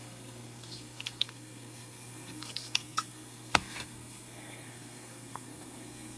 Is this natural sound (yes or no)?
no